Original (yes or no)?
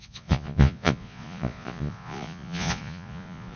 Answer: no